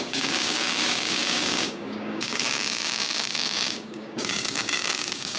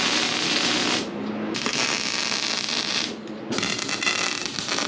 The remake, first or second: first